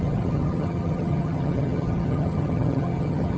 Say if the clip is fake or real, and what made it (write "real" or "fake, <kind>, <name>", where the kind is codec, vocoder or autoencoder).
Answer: fake, vocoder, HiFi-GAN